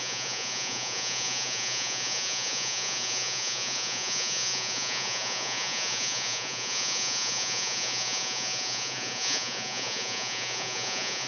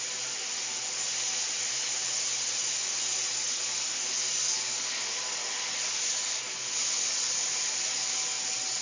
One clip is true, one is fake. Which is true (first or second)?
second